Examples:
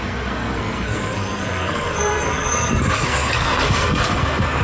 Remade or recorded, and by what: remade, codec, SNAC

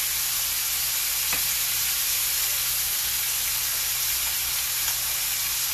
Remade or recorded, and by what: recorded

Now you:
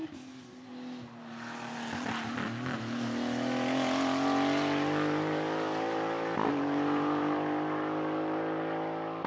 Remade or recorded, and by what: recorded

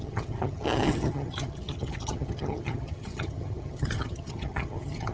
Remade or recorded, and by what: remade, vocoder, HiFi-GAN